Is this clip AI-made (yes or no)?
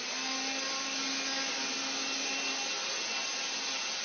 no